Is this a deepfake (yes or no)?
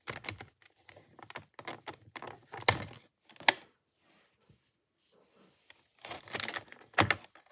no